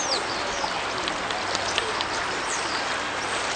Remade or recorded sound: recorded